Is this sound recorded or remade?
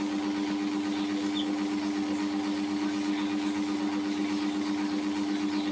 recorded